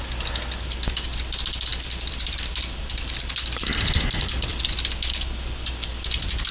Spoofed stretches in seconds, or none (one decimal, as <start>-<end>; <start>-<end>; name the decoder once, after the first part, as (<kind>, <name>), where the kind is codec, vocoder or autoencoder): 1.7-4.5 (vocoder, BigVGAN v2)

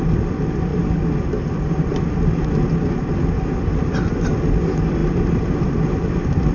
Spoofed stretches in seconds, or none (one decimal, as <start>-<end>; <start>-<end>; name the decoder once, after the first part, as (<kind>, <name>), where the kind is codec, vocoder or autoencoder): 0.0-0.7 (vocoder, BigVGAN v2); 4.6-5.0; 5.6-6.5

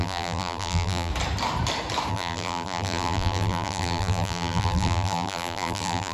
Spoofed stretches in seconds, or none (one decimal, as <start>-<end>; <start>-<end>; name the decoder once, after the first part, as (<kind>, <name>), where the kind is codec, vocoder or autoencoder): 0.0-1.1 (vocoder, BigVGAN v2); 2.1-6.1

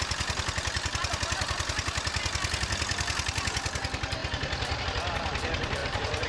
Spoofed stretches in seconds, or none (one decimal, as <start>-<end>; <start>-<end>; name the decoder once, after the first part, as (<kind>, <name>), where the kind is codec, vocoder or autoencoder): 5.8-6.3 (vocoder, BigVGAN v2)

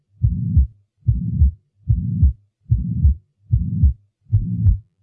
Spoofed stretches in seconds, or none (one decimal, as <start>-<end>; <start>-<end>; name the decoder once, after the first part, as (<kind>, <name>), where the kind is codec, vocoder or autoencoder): 4.3-5.0 (vocoder, BigVGAN v2)

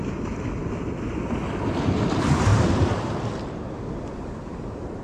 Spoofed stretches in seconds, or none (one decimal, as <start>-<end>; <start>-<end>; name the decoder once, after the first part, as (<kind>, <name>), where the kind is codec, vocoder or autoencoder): 2.5-3.1 (vocoder, BigVGAN v2)